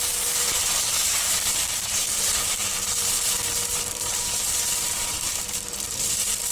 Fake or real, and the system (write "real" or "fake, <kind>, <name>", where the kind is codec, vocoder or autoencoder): fake, vocoder, BigVGAN v2